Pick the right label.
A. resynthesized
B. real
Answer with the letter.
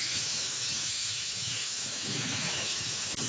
A